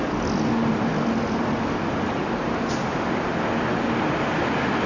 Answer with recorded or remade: recorded